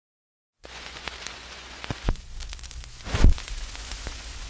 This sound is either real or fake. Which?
fake